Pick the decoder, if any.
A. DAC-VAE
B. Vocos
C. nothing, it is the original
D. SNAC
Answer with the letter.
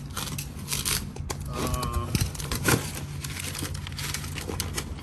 C